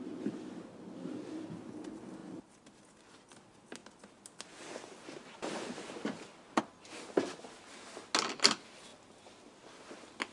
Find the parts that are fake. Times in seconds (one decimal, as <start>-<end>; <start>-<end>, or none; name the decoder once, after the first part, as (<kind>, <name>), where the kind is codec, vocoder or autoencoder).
none